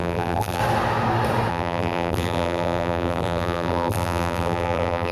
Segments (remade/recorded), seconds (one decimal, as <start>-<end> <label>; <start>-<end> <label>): 0.0-0.6 remade; 0.6-1.5 recorded; 1.5-5.1 remade